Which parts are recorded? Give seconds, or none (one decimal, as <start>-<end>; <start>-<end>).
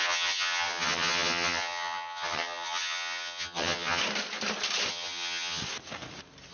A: 4.0-4.9; 5.6-6.5